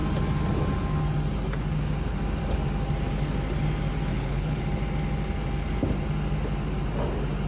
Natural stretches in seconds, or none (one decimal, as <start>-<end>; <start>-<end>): 0.0-4.1; 4.6-7.5